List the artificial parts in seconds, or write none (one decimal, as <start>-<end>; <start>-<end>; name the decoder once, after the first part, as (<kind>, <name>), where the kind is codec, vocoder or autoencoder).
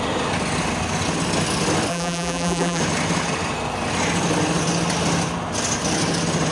1.9-2.8 (vocoder, BigVGAN v2)